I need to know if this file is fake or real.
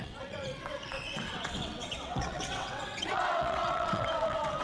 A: fake